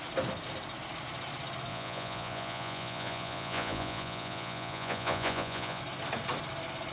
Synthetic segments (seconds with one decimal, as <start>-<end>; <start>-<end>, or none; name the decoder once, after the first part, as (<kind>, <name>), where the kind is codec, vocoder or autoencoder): 1.7-5.8 (vocoder, Vocos)